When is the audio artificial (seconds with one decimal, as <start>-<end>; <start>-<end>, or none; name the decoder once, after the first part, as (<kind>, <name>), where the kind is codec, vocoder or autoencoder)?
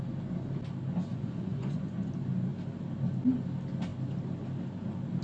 1.1-2.1 (vocoder, Vocos)